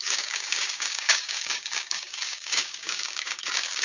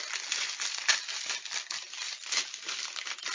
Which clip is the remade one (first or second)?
first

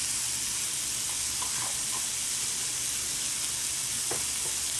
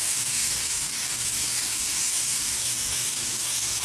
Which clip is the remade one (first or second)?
second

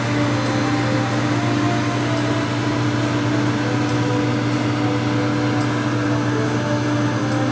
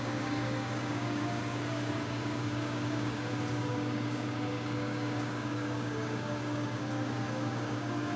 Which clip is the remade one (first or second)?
second